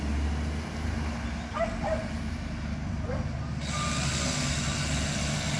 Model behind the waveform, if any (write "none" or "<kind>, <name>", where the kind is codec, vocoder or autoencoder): none